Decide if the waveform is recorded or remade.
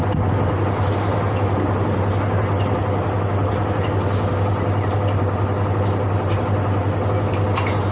recorded